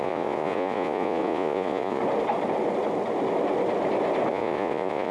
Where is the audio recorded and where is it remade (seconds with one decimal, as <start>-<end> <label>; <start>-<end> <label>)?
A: 0.0-2.0 remade; 2.0-4.3 recorded; 4.3-5.1 remade